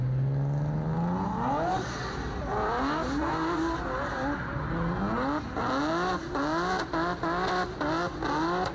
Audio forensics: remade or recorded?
recorded